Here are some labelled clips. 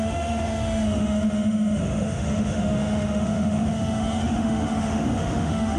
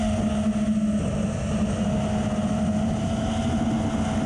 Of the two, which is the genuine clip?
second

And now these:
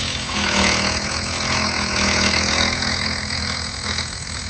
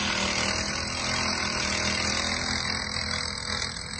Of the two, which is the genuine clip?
second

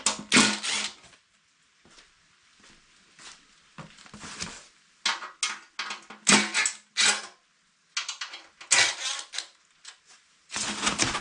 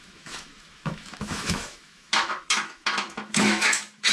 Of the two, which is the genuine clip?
first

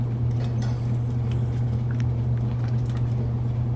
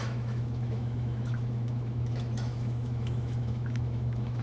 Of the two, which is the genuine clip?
first